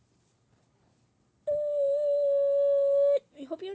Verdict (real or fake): real